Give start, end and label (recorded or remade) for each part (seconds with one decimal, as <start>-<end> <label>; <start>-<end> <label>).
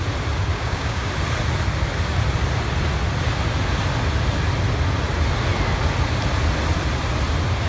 0.0-0.5 recorded; 0.5-1.1 remade; 1.1-7.7 recorded